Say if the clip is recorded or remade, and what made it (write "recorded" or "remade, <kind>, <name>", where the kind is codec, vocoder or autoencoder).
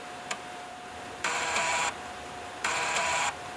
remade, vocoder, BigVGAN v2